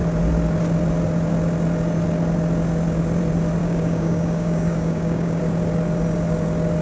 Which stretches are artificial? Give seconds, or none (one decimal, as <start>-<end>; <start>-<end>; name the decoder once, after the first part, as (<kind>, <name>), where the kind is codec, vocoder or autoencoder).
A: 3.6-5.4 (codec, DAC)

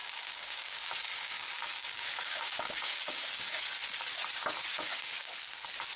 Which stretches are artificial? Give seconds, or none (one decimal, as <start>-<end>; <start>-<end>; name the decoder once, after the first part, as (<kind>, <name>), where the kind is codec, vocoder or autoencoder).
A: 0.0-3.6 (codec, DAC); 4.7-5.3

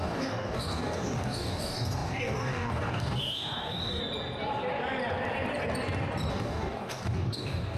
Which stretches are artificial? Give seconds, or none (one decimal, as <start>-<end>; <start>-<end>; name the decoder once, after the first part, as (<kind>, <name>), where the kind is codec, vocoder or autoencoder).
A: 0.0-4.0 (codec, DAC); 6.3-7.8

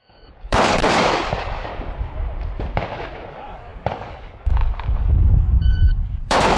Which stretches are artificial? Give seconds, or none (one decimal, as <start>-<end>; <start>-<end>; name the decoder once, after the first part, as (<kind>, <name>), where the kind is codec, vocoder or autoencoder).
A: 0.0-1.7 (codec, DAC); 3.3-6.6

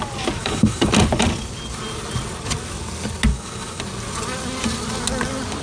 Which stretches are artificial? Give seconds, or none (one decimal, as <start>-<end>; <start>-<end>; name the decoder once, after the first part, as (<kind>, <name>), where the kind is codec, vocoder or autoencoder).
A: 0.4-0.9 (codec, DAC); 3.3-3.8

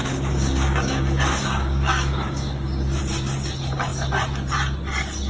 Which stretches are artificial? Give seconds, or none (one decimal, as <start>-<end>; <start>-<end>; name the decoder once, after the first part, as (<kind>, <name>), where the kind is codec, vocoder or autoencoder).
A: 0.0-3.0 (codec, DAC)

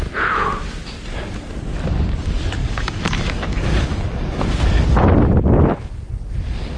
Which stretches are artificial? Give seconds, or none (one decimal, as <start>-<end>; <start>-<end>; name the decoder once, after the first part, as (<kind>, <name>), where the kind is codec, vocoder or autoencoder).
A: 2.6-4.4 (codec, DAC)